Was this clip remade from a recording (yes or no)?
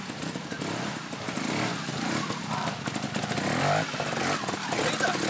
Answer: no